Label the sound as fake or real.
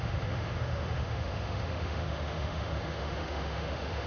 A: fake